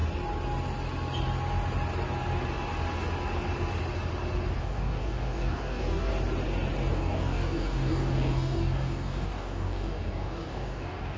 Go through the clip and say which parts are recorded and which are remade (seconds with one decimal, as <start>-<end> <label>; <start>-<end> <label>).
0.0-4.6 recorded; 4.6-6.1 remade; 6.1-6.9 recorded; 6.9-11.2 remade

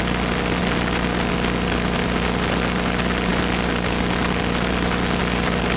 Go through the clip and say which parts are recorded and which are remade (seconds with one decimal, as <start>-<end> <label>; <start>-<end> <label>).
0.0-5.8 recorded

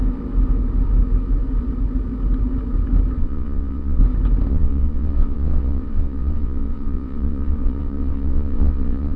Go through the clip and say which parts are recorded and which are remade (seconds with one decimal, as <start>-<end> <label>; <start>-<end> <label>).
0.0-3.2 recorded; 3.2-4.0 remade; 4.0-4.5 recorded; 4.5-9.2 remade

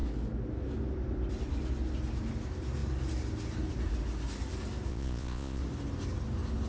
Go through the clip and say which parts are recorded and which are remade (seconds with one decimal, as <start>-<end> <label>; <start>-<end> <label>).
0.0-4.9 recorded; 4.9-5.6 remade; 5.6-6.7 recorded

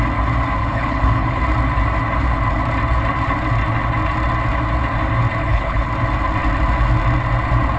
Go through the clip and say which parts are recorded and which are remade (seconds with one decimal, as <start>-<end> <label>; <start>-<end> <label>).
0.0-0.6 recorded; 0.6-1.4 remade; 1.4-5.4 recorded; 5.4-5.9 remade; 5.9-7.8 recorded

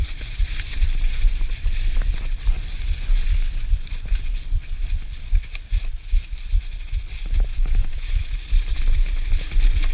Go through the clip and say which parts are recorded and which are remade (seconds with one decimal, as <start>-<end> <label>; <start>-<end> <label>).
0.0-7.5 recorded; 7.5-8.3 remade; 8.3-9.9 recorded